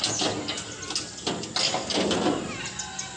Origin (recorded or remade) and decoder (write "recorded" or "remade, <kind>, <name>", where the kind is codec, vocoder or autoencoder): recorded